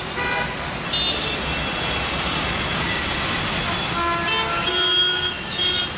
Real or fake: real